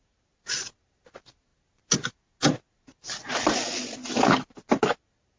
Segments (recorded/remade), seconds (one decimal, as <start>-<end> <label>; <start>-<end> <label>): 0.0-5.4 recorded